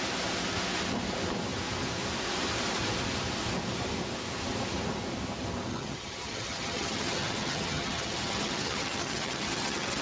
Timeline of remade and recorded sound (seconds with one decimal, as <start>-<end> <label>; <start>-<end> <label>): 0.0-5.7 recorded; 5.7-10.0 remade